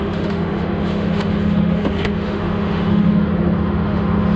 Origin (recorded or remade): remade